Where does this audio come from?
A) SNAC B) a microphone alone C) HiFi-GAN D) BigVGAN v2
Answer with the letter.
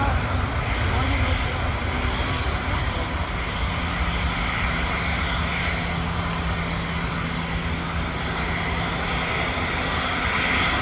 B